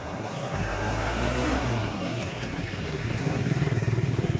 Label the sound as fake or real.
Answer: fake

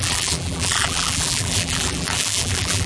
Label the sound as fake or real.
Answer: fake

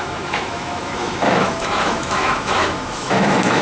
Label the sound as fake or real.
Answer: fake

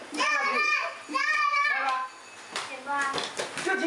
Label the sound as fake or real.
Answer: real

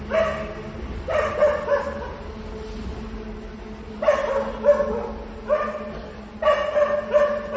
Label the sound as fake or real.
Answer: real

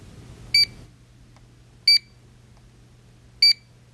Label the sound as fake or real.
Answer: real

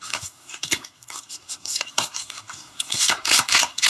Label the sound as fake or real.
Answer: fake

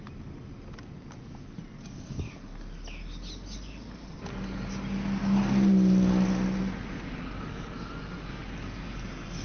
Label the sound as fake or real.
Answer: real